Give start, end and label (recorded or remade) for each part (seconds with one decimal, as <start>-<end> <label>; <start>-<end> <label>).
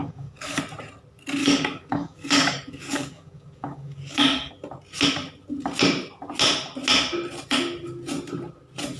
0.0-0.6 remade; 0.6-1.4 recorded; 1.4-4.5 remade; 4.5-9.0 recorded